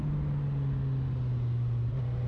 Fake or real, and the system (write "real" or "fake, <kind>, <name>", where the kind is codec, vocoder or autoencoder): real